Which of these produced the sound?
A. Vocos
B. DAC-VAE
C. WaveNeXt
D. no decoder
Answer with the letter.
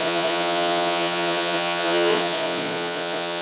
A